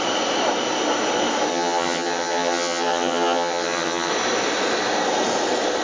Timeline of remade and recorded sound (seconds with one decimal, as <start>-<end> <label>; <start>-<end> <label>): 0.0-1.5 recorded; 1.5-4.1 remade; 4.1-5.8 recorded